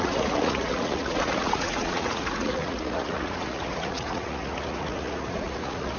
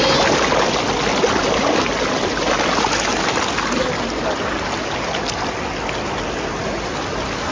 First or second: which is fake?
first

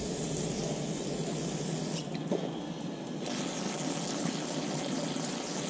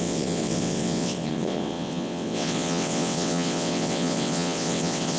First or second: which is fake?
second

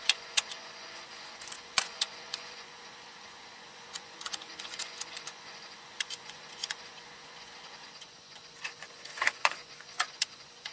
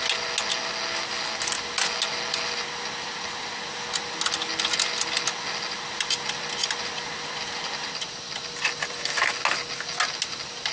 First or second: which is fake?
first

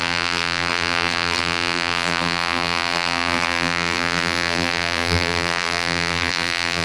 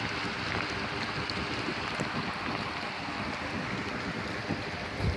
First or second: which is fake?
first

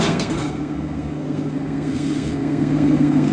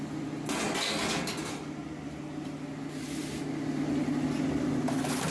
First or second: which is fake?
first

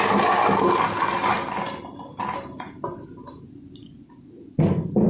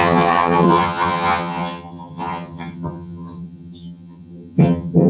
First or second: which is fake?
second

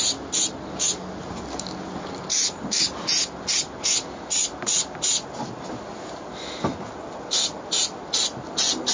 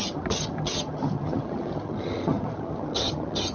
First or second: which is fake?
second